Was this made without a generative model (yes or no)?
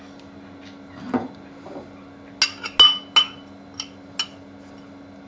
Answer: yes